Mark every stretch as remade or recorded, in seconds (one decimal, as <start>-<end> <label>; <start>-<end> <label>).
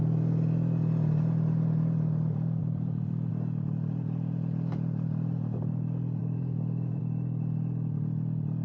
0.0-2.6 recorded; 2.6-3.3 remade; 3.3-6.2 recorded; 6.2-7.0 remade; 7.0-8.6 recorded